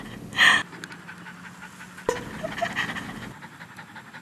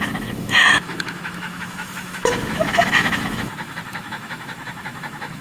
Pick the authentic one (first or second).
first